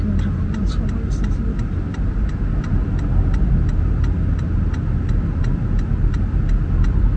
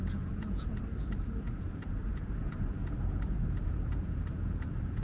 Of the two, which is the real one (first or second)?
first